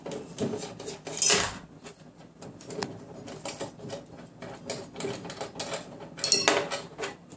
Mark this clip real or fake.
real